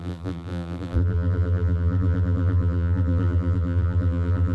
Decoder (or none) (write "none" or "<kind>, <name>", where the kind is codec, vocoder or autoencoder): vocoder, BigVGAN v2